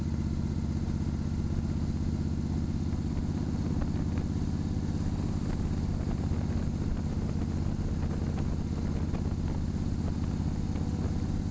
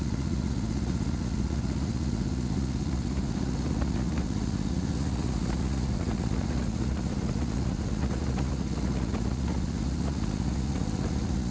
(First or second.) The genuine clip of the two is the first